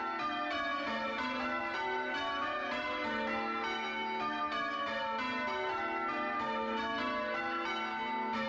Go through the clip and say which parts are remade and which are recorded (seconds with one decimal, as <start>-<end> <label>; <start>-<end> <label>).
0.0-8.5 recorded